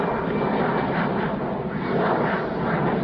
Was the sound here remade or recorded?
recorded